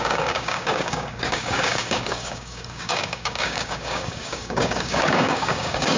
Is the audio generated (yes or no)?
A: yes